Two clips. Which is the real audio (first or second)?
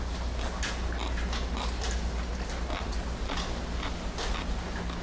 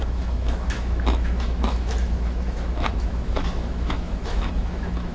first